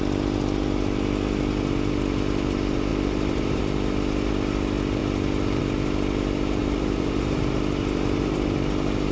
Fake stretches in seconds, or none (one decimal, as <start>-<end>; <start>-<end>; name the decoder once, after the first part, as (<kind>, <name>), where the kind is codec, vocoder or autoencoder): 2.9-3.6 (vocoder, BigVGAN v2); 6.6-7.4